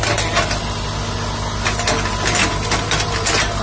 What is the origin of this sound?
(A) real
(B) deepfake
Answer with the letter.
A